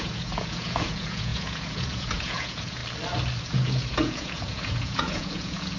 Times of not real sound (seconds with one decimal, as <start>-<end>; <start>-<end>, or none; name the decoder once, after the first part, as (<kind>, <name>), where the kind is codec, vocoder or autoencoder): 0.0-2.8 (vocoder, Vocos); 3.4-5.8